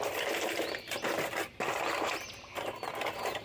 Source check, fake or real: real